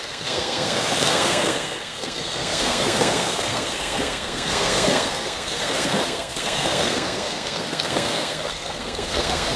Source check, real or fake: fake